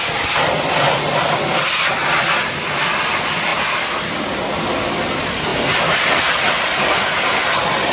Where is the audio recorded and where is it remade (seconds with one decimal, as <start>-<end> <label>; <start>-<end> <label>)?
0.0-2.0 remade; 2.0-2.8 recorded; 2.8-3.5 remade; 3.5-4.9 recorded; 4.9-7.9 remade